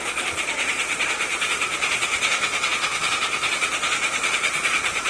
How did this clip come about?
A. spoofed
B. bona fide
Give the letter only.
A